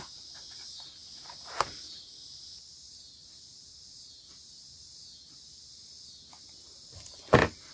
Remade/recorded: recorded